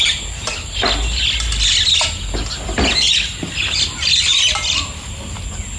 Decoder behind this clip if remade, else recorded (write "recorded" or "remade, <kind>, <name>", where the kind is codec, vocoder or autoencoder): recorded